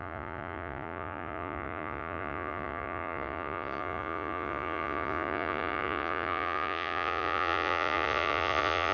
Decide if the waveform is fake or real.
fake